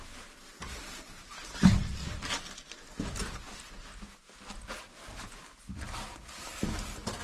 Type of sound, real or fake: real